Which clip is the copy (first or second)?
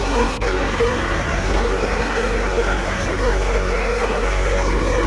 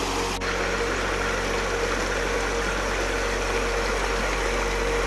first